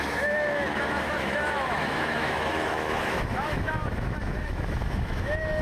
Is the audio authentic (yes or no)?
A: no